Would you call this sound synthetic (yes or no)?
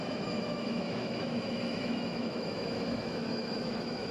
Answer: yes